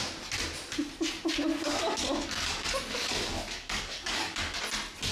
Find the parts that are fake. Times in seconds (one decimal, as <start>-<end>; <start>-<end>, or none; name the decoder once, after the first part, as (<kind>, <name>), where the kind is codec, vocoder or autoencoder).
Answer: 1.5-4.6 (codec, DAC)